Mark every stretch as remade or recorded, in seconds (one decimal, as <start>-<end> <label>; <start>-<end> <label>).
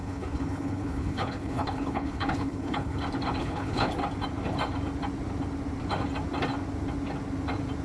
0.0-3.0 remade; 3.0-3.4 recorded; 3.4-3.9 remade; 3.9-7.8 recorded